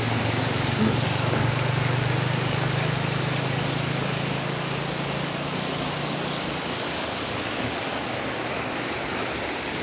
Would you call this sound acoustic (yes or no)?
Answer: no